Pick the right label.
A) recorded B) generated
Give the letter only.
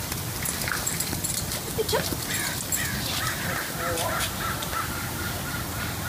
A